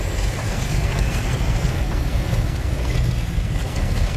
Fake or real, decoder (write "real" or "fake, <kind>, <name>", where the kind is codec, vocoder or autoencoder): fake, codec, SNAC